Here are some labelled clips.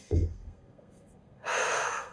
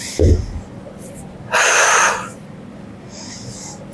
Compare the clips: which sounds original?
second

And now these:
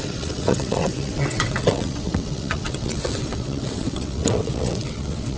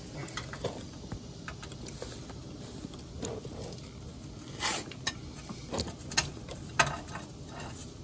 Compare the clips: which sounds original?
second